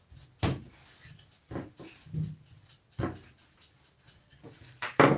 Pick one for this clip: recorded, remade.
recorded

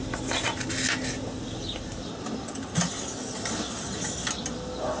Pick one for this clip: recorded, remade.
recorded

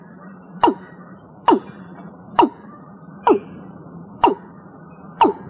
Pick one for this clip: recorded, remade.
remade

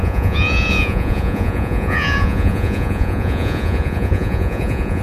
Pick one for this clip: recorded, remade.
remade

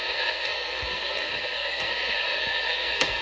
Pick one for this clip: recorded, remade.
remade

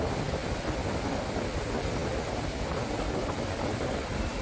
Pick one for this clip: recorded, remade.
recorded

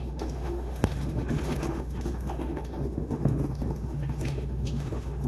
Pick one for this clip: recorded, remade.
remade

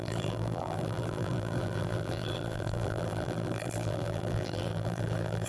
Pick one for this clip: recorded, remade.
remade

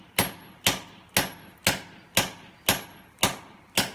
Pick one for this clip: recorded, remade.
recorded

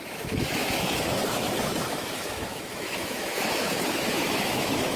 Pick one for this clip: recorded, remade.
remade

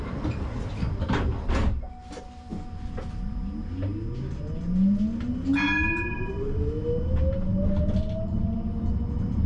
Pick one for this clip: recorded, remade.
recorded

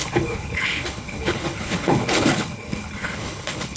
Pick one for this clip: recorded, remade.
remade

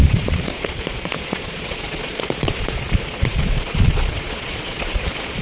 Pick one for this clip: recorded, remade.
remade